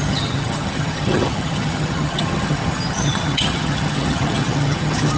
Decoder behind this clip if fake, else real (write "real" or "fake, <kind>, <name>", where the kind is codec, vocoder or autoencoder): fake, vocoder, HiFi-GAN